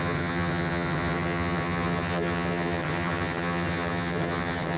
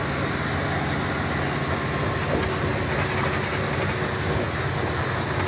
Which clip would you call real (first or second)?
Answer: second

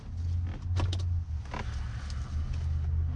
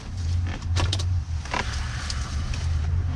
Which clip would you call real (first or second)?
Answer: first